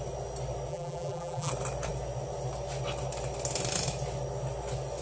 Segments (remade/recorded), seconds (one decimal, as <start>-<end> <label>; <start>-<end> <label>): 0.0-0.7 recorded; 0.7-1.5 remade; 1.5-5.0 recorded